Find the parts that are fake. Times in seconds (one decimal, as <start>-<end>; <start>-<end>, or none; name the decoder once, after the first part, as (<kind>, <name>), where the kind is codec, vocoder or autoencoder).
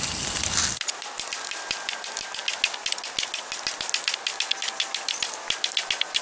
none